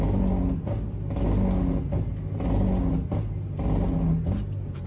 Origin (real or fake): real